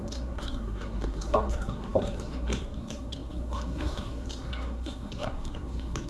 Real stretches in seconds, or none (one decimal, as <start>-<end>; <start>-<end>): none